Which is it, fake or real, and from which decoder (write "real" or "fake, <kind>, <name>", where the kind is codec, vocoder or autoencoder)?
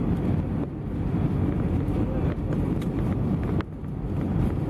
real